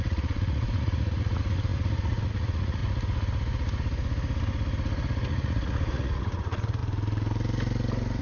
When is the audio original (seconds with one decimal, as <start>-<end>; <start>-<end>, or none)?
2.8-5.3; 6.8-8.2